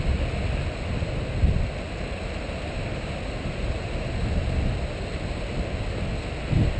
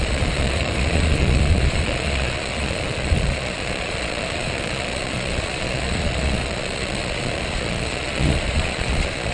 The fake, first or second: second